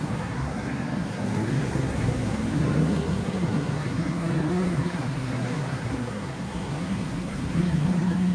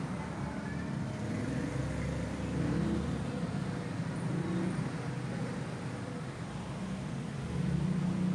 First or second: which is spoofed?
first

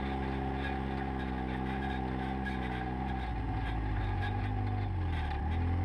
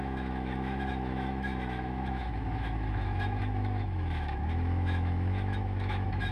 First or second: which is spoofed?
second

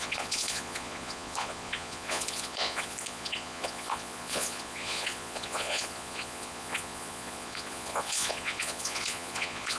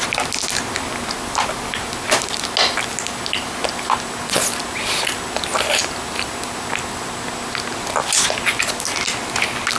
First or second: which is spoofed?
first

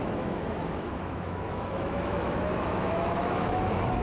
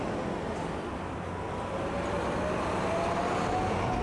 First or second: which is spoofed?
first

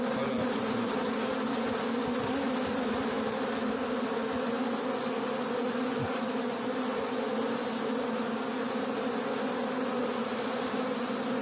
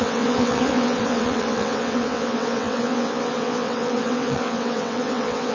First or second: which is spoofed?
second